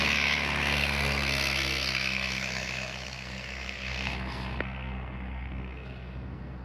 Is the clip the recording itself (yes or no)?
no